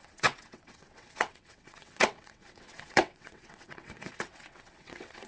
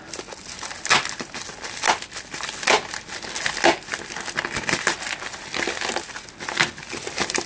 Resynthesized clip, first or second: first